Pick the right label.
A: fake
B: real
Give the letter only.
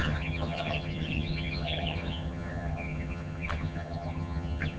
A